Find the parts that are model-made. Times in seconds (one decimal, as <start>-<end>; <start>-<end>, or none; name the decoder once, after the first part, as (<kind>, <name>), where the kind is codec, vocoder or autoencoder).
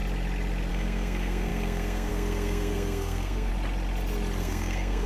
0.7-3.5 (codec, SNAC); 4.4-5.1